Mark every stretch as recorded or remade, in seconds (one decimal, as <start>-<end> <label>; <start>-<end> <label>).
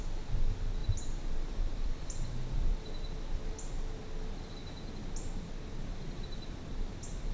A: 0.0-0.8 recorded; 0.8-2.8 remade; 2.8-5.9 recorded; 5.9-7.3 remade